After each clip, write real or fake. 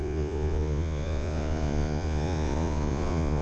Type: fake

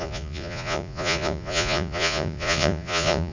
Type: fake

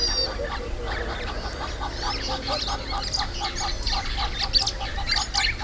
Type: real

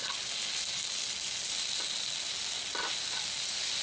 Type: real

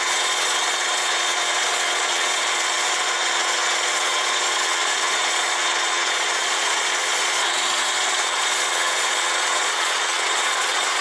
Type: fake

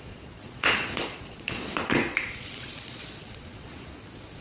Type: fake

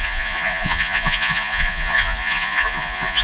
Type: fake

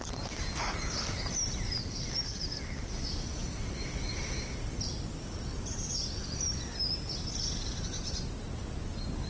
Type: real